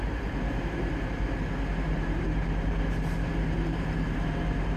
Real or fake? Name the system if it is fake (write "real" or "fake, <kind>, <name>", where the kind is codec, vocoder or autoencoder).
fake, vocoder, BigVGAN v2